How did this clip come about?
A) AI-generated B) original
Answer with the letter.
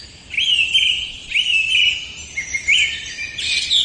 B